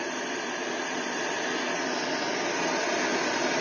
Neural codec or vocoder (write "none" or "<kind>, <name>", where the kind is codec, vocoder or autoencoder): none